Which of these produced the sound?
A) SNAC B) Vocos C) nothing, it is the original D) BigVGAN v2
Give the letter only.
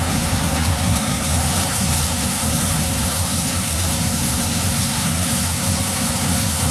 A